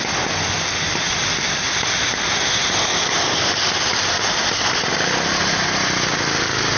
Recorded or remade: recorded